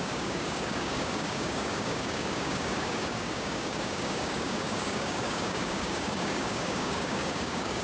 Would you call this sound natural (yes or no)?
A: no